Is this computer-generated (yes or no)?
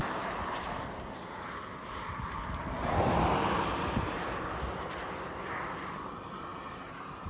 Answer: no